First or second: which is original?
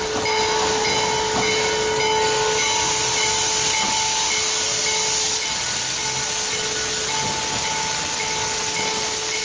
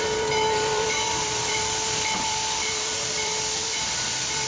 first